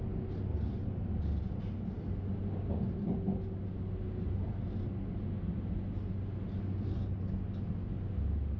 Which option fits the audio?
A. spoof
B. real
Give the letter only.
B